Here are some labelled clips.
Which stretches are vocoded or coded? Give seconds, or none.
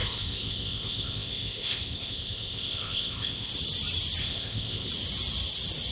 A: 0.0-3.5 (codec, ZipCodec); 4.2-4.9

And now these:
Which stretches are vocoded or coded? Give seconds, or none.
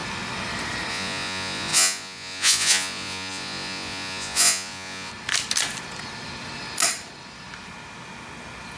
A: 0.9-5.1 (vocoder, Vocos)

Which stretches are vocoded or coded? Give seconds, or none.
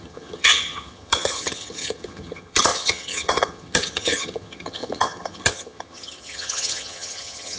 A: 0.0-7.6 (vocoder, HiFi-GAN)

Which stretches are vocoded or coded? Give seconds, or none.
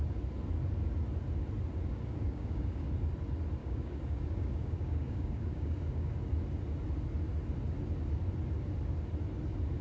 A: 1.9-2.9 (codec, DAC); 3.6-6.1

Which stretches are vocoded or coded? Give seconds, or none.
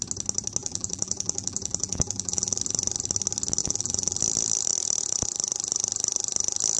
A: 0.6-2.6 (vocoder, BigVGAN v2); 3.6-4.2